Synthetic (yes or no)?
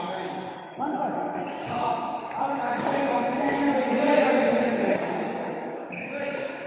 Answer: yes